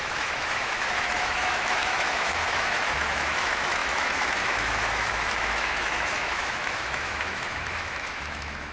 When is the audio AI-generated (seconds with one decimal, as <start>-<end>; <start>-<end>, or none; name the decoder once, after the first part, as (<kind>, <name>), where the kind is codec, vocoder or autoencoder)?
0.0-8.7 (autoencoder, DAC-VAE)